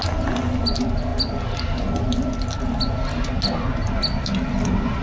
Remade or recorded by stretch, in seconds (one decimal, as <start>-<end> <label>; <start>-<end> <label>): 0.0-5.0 recorded